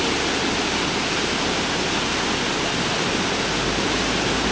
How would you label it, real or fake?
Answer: real